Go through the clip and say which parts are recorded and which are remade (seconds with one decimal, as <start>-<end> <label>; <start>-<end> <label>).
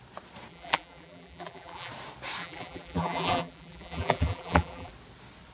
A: 0.0-0.5 recorded; 0.5-1.9 remade; 1.9-2.4 recorded; 2.4-4.9 remade; 4.9-5.5 recorded